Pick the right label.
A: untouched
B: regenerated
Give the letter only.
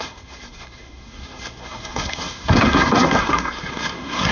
B